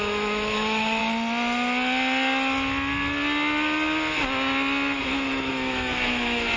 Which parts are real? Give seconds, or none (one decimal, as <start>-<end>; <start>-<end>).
1.0-5.0